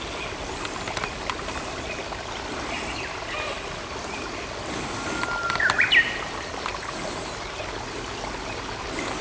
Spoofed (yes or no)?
no